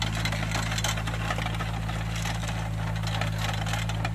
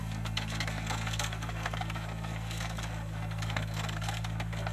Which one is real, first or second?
first